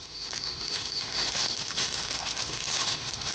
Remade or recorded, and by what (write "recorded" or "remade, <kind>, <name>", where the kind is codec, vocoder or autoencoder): remade, autoencoder, DAC-VAE